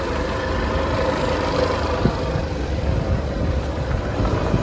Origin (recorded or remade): remade